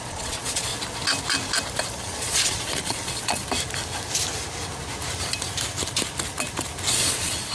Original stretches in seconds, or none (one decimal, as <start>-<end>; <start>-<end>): 0.7-2.0; 3.4-6.9